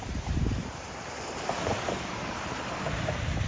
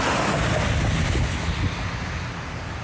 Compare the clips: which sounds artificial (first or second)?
first